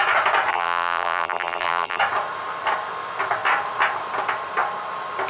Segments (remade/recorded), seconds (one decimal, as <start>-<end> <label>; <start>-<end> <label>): 0.0-0.5 recorded; 0.5-2.0 remade; 2.0-5.3 recorded